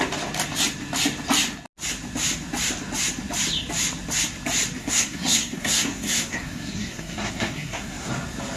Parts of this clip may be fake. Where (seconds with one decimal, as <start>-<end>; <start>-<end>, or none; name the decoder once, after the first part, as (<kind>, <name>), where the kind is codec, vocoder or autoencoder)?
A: 4.8-8.1 (codec, SNAC)